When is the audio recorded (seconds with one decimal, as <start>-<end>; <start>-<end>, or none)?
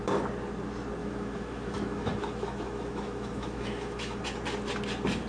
0.0-1.0; 4.2-5.3